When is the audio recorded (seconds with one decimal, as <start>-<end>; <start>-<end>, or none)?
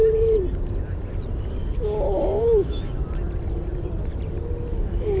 0.0-2.4; 2.9-5.2